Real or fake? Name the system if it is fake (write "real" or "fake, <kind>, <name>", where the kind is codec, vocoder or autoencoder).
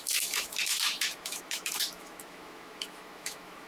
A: fake, autoencoder, DAC-VAE